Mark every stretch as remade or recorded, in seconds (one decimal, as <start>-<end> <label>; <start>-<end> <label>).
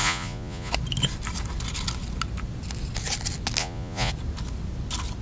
0.0-0.7 remade; 0.7-3.6 recorded; 3.6-4.1 remade; 4.1-5.2 recorded